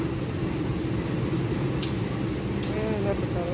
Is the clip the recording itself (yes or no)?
yes